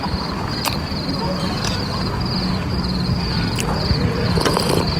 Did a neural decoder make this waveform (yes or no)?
no